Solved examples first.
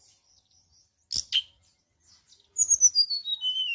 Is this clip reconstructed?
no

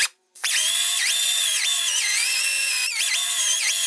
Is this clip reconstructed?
yes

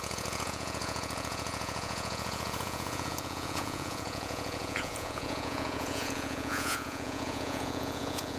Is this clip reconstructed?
yes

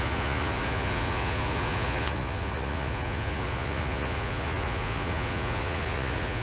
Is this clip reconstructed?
yes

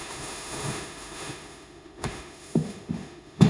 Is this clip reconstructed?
yes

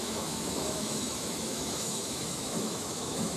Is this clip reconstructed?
yes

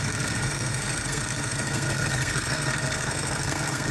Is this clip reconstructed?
yes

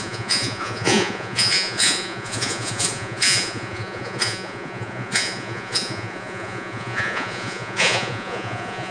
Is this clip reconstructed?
yes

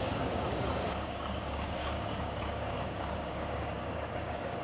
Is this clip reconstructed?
yes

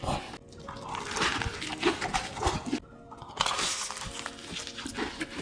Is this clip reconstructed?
no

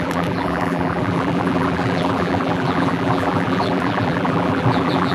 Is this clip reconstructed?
yes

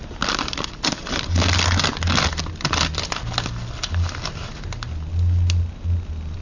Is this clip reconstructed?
no